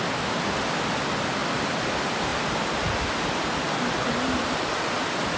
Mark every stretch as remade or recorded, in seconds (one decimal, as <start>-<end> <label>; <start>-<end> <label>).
0.0-5.4 recorded